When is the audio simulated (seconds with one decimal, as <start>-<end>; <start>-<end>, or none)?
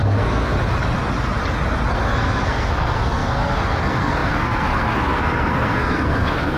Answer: 0.0-0.5; 1.9-6.6